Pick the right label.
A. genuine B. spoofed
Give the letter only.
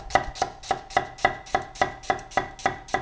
A